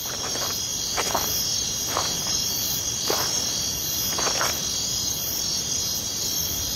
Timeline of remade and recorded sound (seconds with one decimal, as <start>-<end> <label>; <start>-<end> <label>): 0.0-6.8 recorded